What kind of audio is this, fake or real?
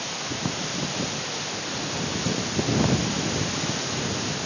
real